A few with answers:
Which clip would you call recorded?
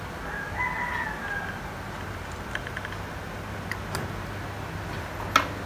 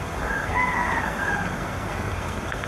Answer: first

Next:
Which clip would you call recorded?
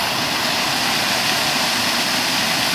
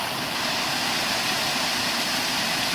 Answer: first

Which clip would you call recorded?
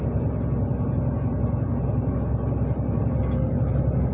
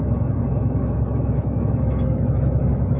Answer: first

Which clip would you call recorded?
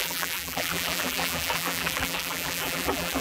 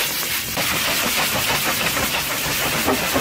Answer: second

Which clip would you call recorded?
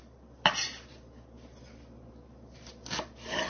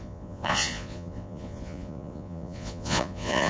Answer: first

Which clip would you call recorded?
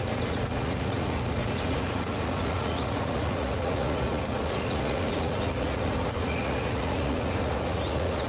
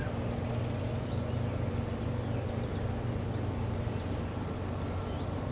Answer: second